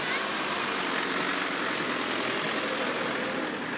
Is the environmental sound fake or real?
real